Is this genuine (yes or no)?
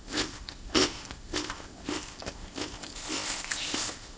no